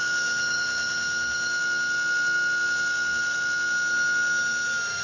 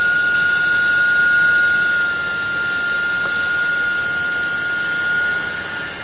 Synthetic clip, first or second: first